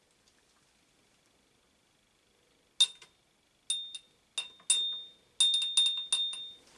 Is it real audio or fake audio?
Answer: real